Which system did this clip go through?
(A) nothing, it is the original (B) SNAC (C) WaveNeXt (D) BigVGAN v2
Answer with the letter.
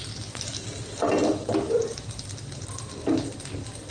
A